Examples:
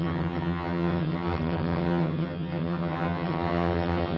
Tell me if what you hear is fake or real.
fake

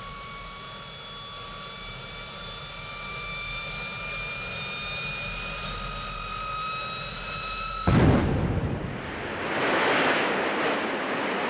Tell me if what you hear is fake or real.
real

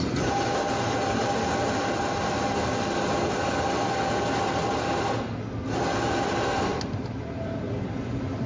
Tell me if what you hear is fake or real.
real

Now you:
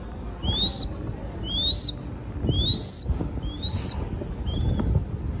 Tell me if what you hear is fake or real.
real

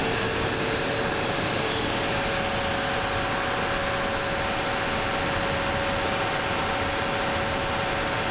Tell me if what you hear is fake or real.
real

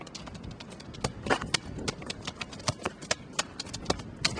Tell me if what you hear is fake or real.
real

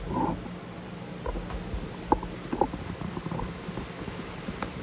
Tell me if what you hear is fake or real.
real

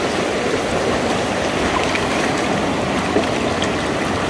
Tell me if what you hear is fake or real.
real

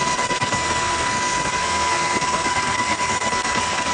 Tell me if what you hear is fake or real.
fake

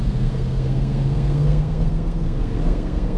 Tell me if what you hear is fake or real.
fake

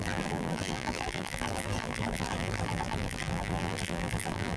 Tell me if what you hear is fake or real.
fake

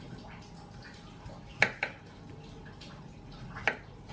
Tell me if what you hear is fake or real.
real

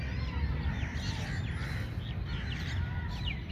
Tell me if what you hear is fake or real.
real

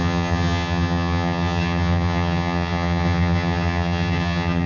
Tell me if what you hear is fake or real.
fake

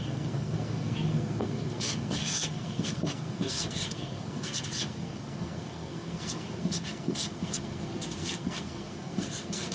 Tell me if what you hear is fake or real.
fake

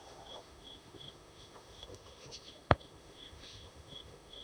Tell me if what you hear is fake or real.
fake